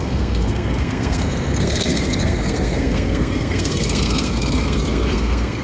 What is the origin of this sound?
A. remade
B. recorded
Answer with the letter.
A